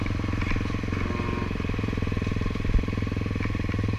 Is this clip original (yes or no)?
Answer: yes